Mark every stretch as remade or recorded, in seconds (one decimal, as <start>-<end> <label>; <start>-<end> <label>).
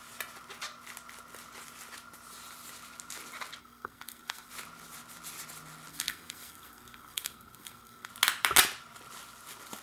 0.0-3.6 recorded; 3.6-4.5 remade; 4.5-5.9 recorded; 5.9-8.1 remade; 8.1-9.8 recorded